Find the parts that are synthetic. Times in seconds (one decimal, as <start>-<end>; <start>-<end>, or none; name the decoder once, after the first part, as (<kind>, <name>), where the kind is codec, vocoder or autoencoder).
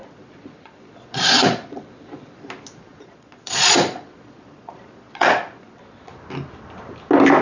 0.0-2.4 (vocoder, Vocos); 2.9-6.1